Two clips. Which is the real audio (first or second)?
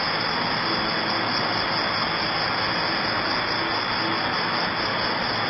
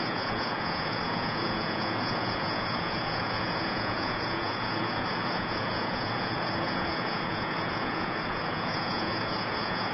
first